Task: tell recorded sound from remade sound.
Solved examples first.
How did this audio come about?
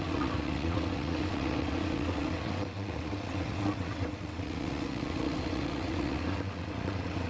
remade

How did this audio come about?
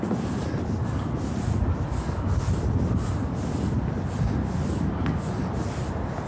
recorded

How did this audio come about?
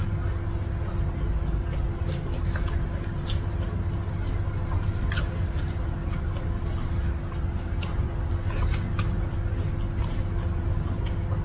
recorded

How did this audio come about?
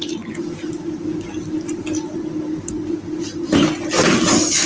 recorded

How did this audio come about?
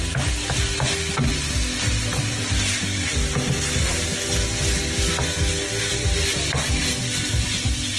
recorded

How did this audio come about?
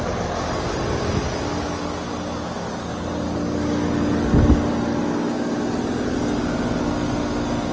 recorded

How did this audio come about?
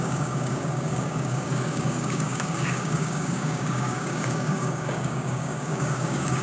remade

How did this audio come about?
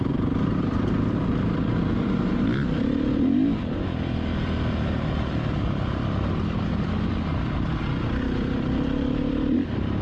remade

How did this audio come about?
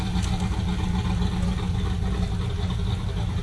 recorded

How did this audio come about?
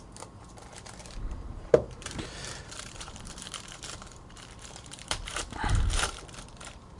remade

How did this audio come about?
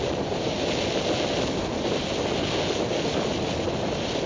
recorded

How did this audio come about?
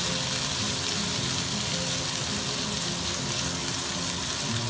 recorded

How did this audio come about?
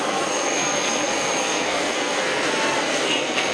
remade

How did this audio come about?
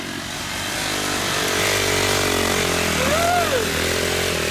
recorded